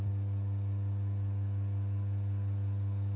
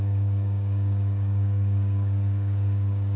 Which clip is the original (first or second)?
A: first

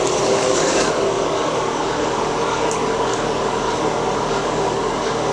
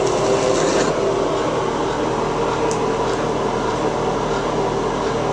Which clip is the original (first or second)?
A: second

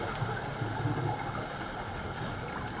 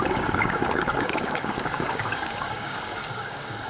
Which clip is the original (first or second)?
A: first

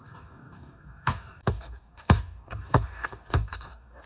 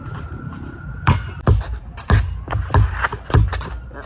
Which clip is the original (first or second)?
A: second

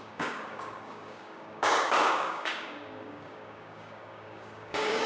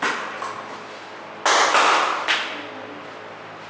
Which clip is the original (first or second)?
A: second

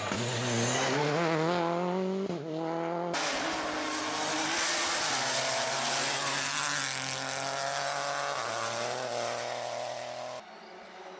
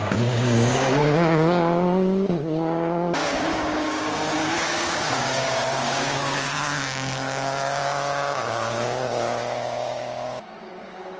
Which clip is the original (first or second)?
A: first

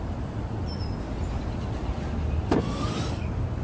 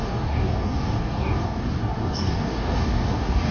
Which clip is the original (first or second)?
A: first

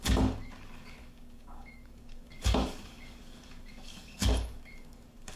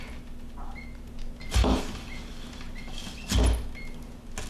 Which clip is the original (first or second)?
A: second